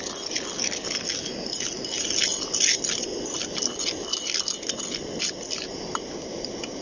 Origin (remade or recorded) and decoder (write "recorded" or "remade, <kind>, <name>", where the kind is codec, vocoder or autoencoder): recorded